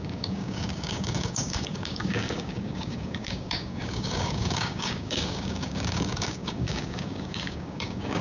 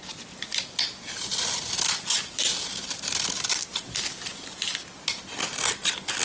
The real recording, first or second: second